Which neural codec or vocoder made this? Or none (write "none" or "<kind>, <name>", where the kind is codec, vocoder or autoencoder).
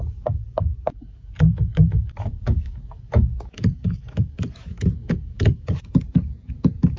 codec, DAC